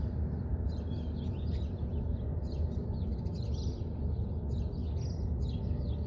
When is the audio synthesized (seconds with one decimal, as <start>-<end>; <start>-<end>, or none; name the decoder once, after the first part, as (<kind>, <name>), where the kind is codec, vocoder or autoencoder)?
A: 0.0-3.1 (vocoder, BigVGAN v2); 3.7-4.8